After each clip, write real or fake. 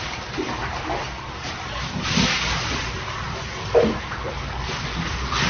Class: real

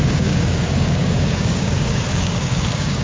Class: fake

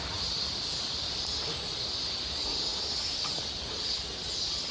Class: real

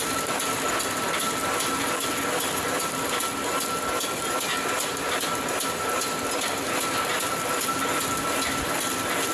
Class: real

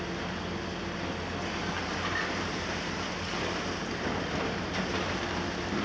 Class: real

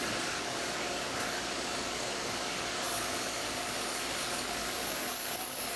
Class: fake